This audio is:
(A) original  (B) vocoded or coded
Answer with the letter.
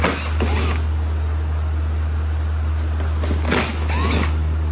A